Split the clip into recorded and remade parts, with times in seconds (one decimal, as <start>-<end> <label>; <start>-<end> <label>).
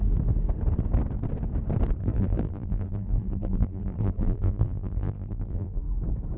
0.0-2.0 recorded; 2.0-5.8 remade; 5.8-6.4 recorded